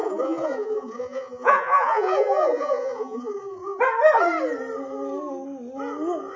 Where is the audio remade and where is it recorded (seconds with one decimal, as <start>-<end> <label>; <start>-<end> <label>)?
0.0-3.8 remade; 3.8-6.4 recorded